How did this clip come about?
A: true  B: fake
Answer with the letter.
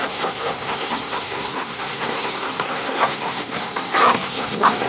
B